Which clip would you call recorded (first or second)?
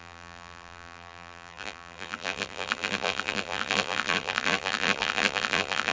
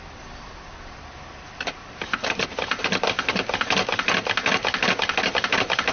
second